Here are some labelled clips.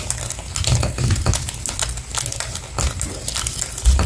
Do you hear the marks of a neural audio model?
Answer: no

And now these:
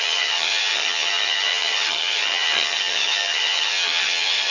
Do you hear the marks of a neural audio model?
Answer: yes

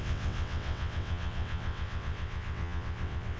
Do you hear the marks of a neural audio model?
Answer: yes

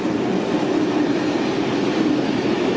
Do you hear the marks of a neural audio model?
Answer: no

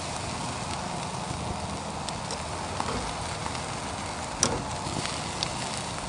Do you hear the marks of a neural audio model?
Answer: no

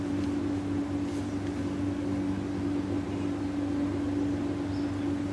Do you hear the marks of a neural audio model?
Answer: no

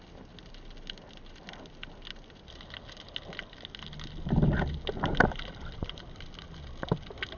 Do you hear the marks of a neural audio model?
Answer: no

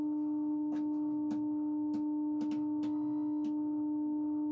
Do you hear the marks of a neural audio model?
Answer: no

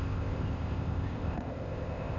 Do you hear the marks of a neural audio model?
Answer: yes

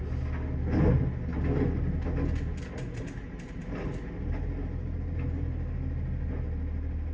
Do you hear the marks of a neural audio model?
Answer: no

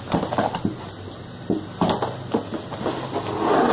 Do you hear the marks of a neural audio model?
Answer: no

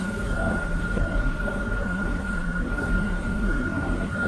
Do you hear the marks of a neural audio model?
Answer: yes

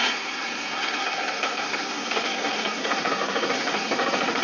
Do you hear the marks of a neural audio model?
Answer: yes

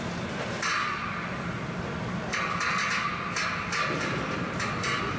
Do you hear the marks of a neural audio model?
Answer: no